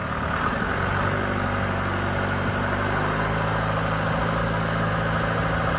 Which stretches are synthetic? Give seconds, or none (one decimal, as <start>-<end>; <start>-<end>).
4.4-4.9